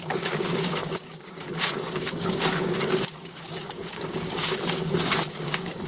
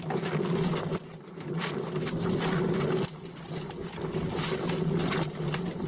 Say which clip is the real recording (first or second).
second